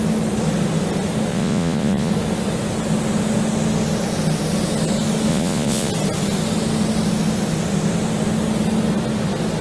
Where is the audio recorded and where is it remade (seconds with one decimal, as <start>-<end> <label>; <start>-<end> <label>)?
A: 0.0-1.3 recorded; 1.3-2.1 remade; 2.1-5.3 recorded; 5.3-5.9 remade; 5.9-9.6 recorded